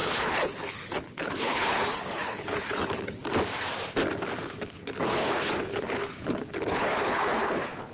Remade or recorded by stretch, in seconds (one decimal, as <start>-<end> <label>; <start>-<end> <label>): 0.0-3.2 remade; 3.2-4.6 recorded; 4.6-7.9 remade